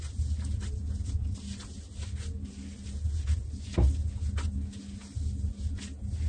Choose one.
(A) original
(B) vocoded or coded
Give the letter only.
A